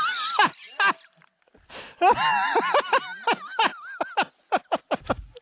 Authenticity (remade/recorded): recorded